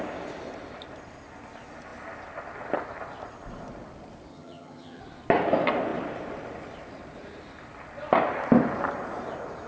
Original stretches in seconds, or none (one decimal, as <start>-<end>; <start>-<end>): 0.0-4.3; 5.0-9.7